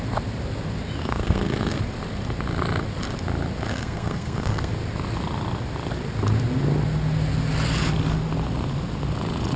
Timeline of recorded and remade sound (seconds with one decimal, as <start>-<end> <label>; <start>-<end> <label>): 0.0-1.0 recorded; 1.0-1.8 remade; 1.8-3.7 recorded; 3.7-4.7 remade; 4.7-9.6 recorded